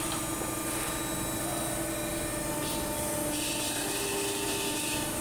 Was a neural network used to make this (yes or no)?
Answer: no